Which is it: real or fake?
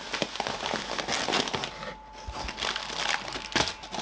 real